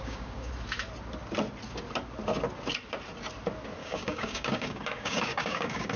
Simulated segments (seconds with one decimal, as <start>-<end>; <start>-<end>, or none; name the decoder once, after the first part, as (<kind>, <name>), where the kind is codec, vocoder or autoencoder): 0.0-0.5 (codec, DAC); 3.8-6.0